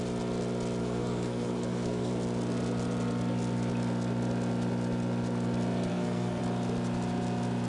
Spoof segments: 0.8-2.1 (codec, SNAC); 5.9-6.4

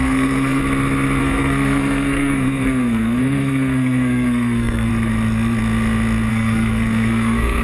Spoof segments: 0.0-0.6 (codec, SNAC); 1.2-4.9; 6.3-7.6

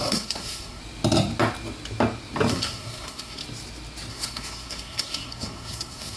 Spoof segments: 0.0-0.8 (codec, SNAC); 2.5-3.4; 4.1-6.2

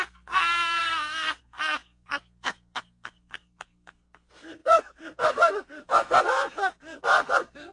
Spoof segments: 0.0-7.7 (codec, SNAC)

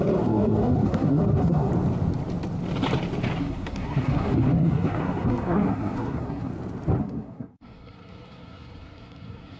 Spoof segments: 0.0-1.7 (codec, SNAC); 3.4-6.5; 7.0-9.6

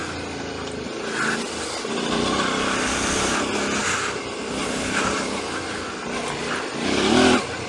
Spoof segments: none

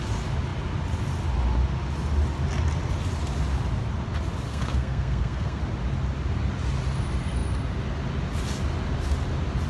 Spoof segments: 4.5-5.6 (codec, SNAC)

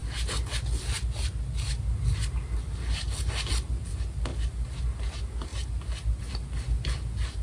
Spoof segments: none